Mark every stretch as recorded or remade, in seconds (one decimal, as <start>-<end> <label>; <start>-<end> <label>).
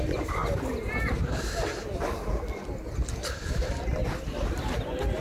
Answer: 0.0-0.4 remade; 0.4-3.5 recorded; 3.5-4.0 remade; 4.0-5.2 recorded